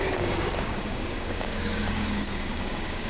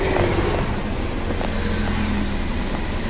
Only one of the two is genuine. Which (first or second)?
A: second